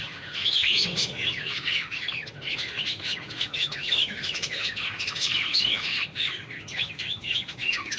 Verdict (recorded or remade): remade